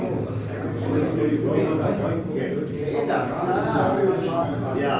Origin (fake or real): real